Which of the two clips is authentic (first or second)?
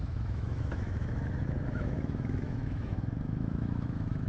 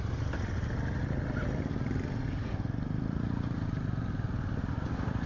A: second